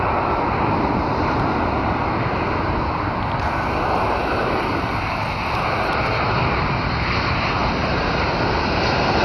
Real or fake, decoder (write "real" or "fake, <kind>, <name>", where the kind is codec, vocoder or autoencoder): real